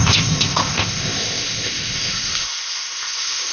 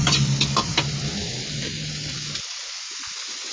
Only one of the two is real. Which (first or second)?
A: second